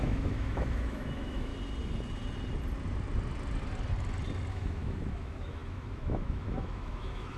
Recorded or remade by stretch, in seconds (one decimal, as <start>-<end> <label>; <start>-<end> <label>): 0.0-1.5 remade; 1.5-4.5 recorded; 4.5-7.4 remade